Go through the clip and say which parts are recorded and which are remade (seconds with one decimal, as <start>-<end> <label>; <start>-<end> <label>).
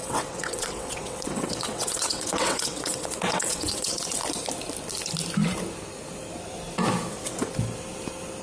0.0-4.2 remade; 4.2-7.1 recorded; 7.1-7.5 remade; 7.5-8.4 recorded